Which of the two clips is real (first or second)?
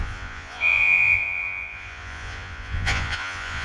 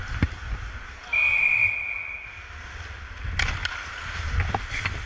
second